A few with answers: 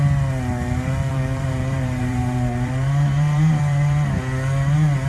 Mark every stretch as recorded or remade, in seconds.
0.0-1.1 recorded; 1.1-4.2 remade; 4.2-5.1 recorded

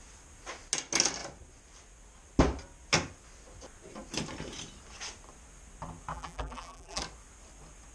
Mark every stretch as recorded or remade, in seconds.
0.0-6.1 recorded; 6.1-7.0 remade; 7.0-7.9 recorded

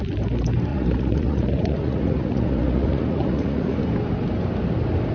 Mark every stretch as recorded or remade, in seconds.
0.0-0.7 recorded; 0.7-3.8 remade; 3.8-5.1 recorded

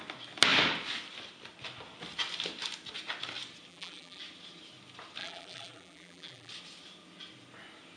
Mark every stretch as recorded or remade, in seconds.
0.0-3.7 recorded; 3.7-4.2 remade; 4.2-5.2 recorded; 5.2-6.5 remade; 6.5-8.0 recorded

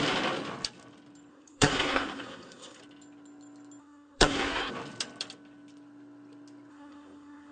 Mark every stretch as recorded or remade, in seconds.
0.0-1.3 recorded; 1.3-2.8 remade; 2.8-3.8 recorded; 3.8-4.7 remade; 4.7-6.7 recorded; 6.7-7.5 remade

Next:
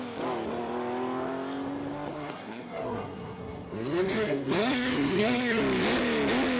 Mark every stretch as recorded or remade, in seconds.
0.0-2.1 recorded; 2.1-5.6 remade; 5.6-6.6 recorded